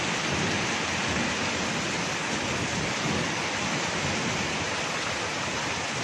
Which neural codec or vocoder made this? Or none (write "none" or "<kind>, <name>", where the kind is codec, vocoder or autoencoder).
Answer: none